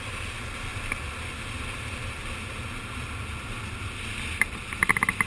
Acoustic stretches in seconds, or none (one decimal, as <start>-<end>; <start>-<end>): 0.0-5.3